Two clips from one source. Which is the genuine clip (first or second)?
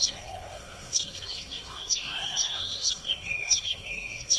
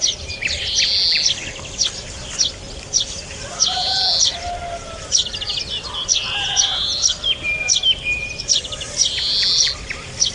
second